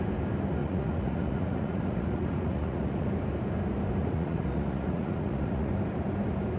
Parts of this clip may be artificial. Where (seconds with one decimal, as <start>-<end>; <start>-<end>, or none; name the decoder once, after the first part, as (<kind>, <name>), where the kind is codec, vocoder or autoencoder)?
0.6-3.1 (vocoder, Vocos); 4.0-5.7